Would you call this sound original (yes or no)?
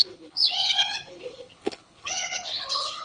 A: no